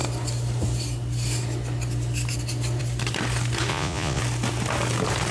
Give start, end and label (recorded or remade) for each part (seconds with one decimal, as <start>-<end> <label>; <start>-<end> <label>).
0.0-3.7 recorded; 3.7-4.2 remade; 4.2-5.3 recorded